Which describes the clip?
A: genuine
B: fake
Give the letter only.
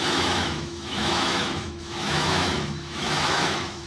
B